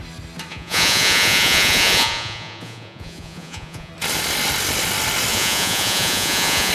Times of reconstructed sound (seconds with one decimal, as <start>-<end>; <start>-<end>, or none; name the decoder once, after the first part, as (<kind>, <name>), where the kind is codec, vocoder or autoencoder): 0.5-3.9 (vocoder, Vocos); 5.3-6.7